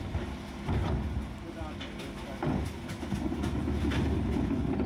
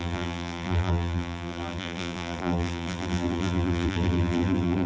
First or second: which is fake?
second